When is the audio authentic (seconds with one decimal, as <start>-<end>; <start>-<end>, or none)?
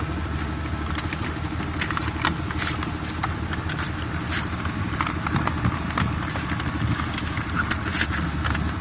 0.0-8.8